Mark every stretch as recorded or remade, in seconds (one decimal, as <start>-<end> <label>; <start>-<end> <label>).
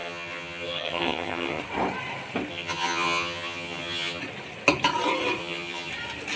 0.0-1.6 remade; 1.6-2.5 recorded; 2.5-4.2 remade; 4.2-5.4 recorded; 5.4-5.9 remade; 5.9-6.4 recorded